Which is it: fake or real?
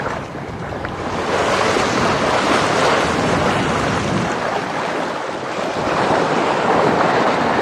real